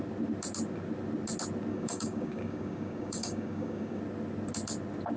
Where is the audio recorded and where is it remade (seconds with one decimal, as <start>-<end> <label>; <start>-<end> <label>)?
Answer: 0.0-1.7 recorded; 1.7-4.0 remade; 4.0-5.2 recorded